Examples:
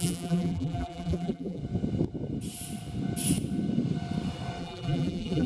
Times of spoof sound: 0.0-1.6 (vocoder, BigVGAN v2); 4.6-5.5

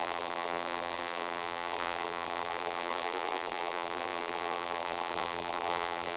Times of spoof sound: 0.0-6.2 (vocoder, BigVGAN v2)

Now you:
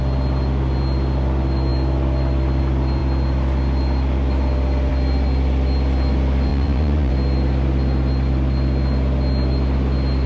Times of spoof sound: 6.5-7.1 (vocoder, Vocos)

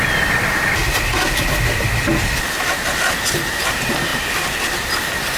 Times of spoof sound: none

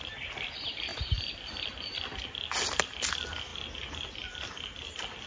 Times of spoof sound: none

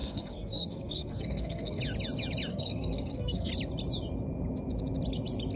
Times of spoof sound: 0.0-1.8 (codec, SNAC); 2.5-3.5

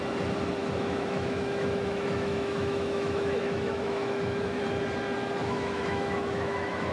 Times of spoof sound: 0.6-4.6 (autoencoder, DAC-VAE); 5.4-6.9

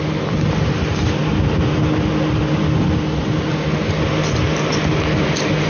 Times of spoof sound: none